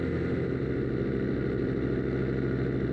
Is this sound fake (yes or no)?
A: no